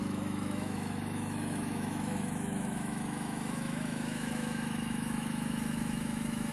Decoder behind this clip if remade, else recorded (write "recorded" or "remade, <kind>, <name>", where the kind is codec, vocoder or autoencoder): remade, autoencoder, DAC-VAE